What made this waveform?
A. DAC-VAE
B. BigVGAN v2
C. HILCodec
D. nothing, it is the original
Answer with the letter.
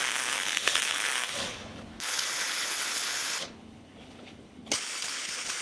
C